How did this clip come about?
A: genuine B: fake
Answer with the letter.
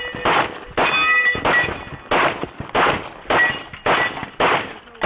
A